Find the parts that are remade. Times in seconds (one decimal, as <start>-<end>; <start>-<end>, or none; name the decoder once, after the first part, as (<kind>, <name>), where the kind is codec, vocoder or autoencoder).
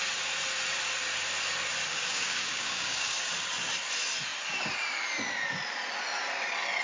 1.9-3.3 (codec, DAC)